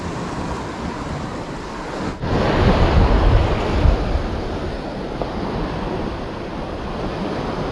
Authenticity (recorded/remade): recorded